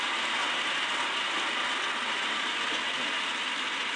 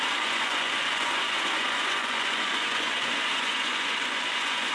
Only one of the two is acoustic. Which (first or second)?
first